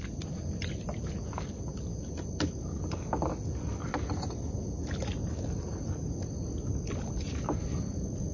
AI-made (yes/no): no